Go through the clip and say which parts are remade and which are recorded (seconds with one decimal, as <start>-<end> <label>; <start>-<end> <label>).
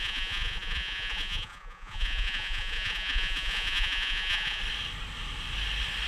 0.0-4.6 remade; 4.6-6.1 recorded